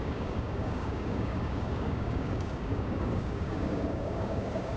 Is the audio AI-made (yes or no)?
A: yes